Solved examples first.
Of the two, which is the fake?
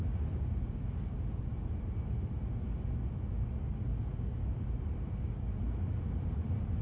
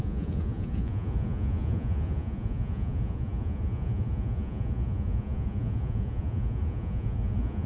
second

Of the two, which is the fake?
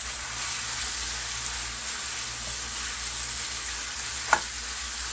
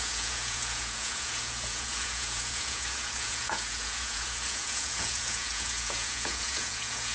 second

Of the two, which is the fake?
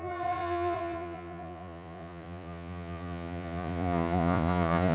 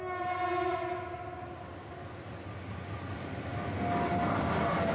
first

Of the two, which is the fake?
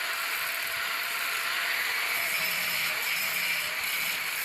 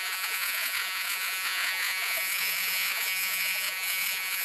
second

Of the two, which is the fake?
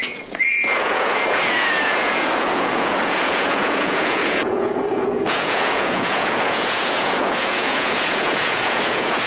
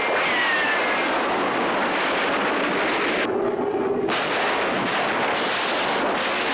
first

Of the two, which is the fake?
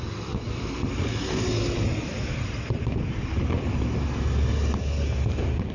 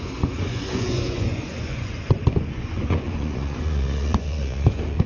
second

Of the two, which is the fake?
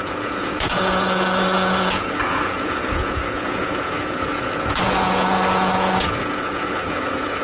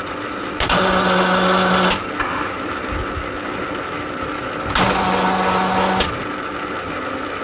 first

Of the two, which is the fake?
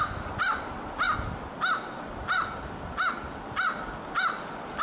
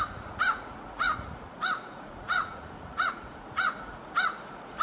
second